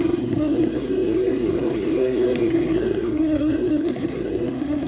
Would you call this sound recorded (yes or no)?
no